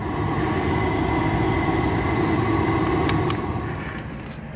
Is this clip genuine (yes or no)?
yes